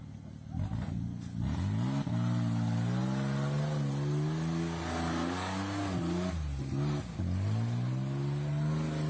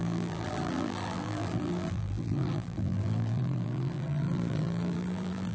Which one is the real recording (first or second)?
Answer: first